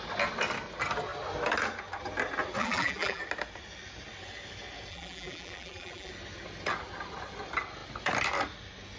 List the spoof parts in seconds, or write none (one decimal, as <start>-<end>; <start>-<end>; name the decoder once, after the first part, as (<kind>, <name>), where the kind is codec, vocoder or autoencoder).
2.6-3.2 (vocoder, BigVGAN v2); 4.9-6.1